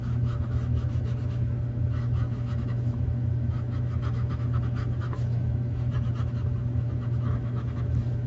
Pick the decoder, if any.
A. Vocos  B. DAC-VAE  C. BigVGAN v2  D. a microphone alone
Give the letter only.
B